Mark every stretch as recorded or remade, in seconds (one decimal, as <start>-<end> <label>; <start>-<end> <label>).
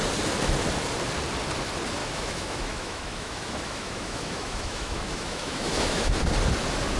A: 0.0-2.0 recorded; 2.0-6.2 remade; 6.2-7.0 recorded